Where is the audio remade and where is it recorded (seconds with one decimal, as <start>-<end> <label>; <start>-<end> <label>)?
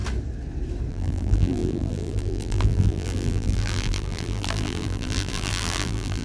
0.0-0.9 recorded; 0.9-6.2 remade